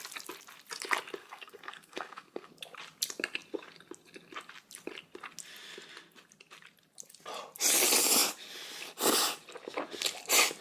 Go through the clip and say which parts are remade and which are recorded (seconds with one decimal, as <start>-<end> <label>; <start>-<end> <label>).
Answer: 0.0-1.2 recorded; 1.2-2.5 remade; 2.5-10.6 recorded